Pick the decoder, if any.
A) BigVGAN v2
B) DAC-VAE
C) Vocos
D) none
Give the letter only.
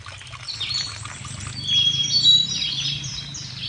D